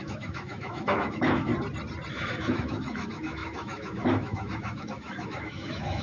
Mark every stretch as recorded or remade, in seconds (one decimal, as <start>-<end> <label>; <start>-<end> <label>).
0.0-1.5 remade; 1.5-2.1 recorded; 2.1-6.0 remade